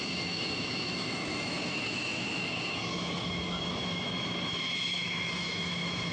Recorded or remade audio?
remade